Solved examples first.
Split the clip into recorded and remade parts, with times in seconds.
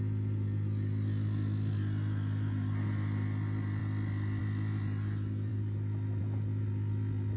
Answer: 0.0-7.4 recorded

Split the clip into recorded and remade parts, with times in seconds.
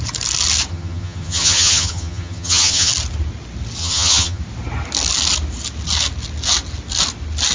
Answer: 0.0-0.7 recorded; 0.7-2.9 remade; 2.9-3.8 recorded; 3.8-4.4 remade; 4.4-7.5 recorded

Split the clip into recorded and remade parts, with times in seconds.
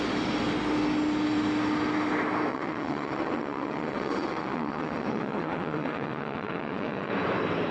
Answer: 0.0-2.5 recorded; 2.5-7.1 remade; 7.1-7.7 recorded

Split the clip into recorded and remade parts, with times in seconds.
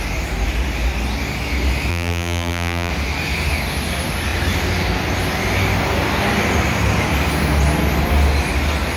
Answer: 0.0-1.9 recorded; 1.9-2.9 remade; 2.9-9.0 recorded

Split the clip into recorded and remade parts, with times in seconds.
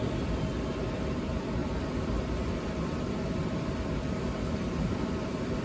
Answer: 0.0-5.6 remade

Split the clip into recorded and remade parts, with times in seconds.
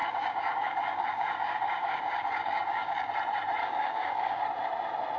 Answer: 0.0-3.1 remade; 3.1-3.6 recorded; 3.6-4.4 remade; 4.4-5.2 recorded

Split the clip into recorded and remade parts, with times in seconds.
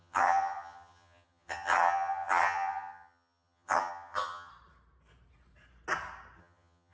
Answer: 0.0-4.5 remade; 4.5-6.4 recorded; 6.4-6.9 remade